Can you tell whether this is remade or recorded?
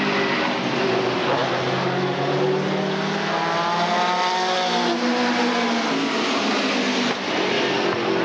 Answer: recorded